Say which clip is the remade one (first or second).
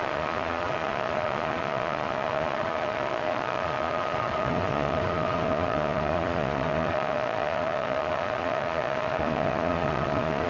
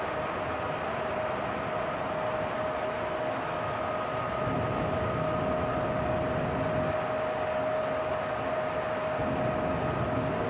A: first